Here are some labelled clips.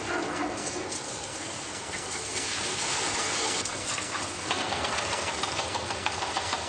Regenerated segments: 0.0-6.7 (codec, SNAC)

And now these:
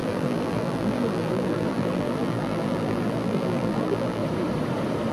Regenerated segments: 0.0-4.2 (vocoder, BigVGAN v2)